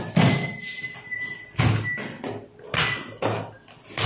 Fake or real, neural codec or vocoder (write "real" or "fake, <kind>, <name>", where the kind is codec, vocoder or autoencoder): real